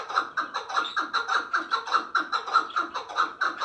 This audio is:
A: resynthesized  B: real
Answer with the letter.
A